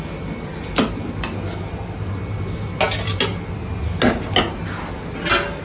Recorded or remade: recorded